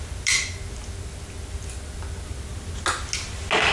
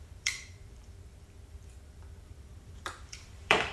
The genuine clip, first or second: first